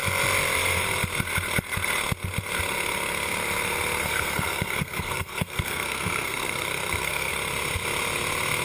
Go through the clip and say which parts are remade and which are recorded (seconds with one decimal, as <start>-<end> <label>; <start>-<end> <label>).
0.0-4.0 recorded; 4.0-7.3 remade; 7.3-8.6 recorded